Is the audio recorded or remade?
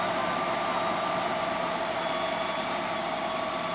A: recorded